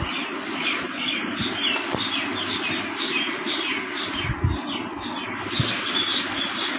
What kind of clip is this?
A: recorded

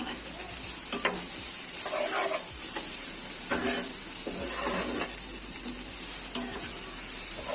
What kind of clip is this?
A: recorded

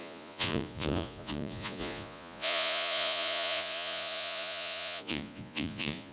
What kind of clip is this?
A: remade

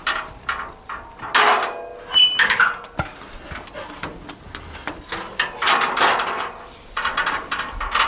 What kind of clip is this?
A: recorded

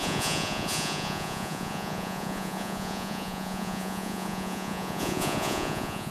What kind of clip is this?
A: remade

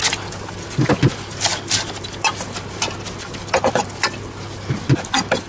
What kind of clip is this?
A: recorded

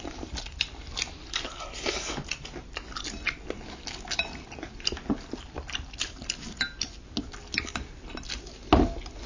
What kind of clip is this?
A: recorded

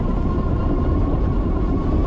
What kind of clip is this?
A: recorded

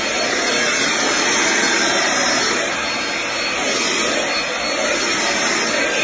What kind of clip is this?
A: recorded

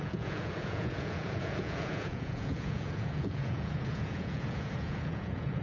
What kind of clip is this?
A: remade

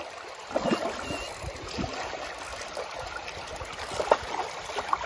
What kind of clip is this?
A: recorded